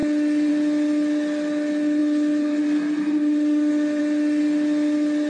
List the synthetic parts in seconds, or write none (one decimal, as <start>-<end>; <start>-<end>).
none